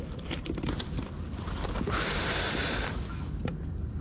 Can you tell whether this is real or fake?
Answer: real